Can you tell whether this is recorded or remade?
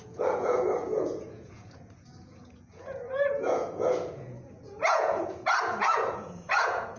remade